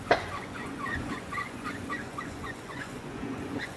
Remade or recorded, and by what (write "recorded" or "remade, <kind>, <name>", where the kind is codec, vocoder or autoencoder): remade, vocoder, Vocos